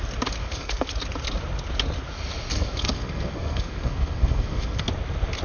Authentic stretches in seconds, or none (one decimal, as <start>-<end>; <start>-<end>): 0.0-0.4; 0.9-2.5; 4.9-5.4